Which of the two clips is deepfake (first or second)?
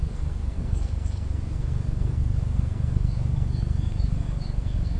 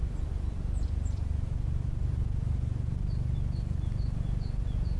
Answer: first